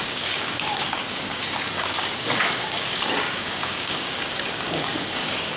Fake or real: fake